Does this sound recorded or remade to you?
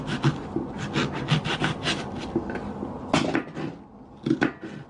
recorded